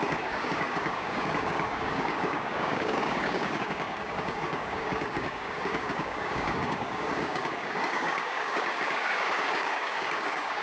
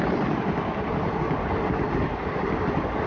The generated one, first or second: first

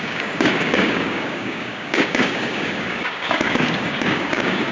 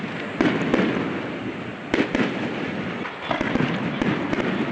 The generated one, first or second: first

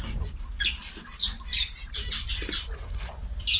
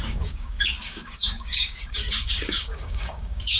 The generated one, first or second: second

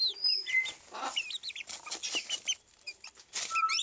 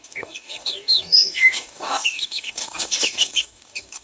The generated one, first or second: second